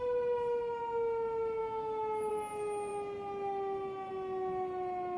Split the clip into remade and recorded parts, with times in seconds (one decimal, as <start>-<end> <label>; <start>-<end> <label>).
0.0-1.6 recorded; 1.6-2.3 remade; 2.3-5.2 recorded